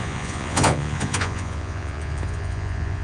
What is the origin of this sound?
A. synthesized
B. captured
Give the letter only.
A